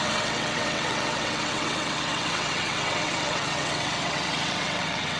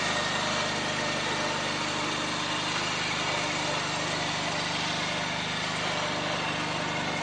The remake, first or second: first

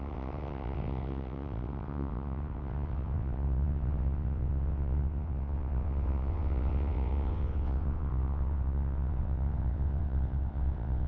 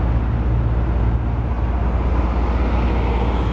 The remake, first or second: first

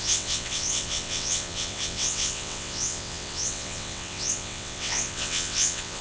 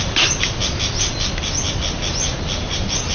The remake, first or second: first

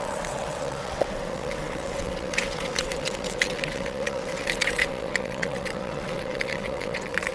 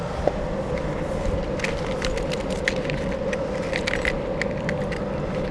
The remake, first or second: first